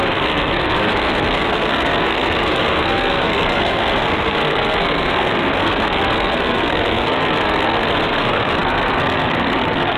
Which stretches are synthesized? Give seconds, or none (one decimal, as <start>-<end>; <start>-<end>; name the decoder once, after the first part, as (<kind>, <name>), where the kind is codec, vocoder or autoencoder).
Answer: 0.0-10.0 (codec, SNAC)

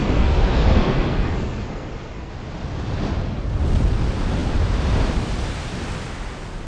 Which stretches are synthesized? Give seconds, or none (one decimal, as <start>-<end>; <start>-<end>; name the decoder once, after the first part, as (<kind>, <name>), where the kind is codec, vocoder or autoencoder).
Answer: 0.0-2.3 (codec, SNAC)

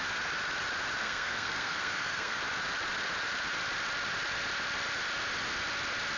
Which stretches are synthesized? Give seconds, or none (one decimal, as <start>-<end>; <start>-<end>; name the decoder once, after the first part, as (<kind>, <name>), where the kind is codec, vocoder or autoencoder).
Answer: 1.0-2.4 (codec, SNAC)

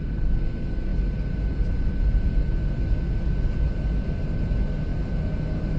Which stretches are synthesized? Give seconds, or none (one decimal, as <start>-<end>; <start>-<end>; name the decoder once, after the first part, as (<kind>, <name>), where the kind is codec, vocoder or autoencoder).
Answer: none

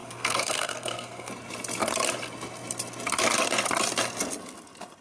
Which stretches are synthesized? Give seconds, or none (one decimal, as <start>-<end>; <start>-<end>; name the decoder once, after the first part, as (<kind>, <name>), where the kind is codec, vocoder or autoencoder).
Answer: 0.0-1.3 (codec, SNAC)

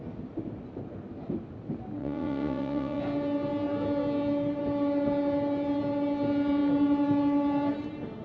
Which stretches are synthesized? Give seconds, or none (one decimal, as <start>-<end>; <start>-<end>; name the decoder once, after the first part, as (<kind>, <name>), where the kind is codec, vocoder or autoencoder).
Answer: 2.0-3.0 (vocoder, Vocos)

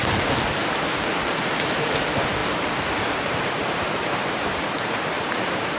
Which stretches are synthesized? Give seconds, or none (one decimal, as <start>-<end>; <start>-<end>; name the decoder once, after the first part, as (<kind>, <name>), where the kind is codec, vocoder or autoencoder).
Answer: 1.3-5.8 (vocoder, BigVGAN v2)

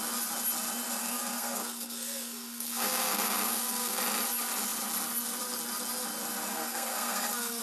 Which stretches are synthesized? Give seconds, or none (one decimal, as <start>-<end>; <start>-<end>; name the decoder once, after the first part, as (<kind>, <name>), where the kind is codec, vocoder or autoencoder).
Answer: 1.0-4.0 (codec, SNAC); 6.5-7.6